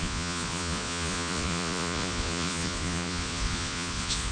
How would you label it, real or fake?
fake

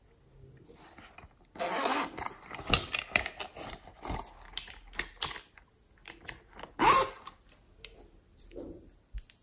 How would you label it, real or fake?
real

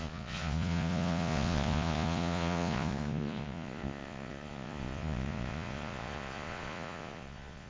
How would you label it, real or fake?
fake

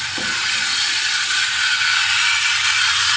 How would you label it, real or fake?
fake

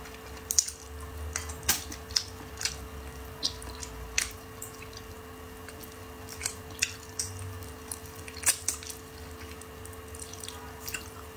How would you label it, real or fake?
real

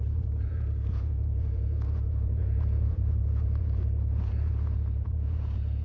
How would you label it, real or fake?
fake